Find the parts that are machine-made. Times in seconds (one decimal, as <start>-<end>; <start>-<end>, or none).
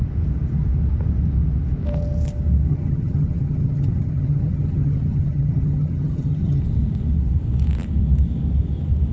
2.7-6.6